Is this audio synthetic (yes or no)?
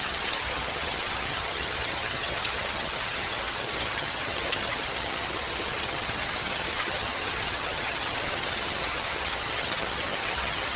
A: yes